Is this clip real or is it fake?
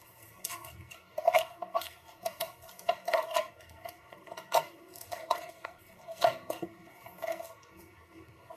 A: fake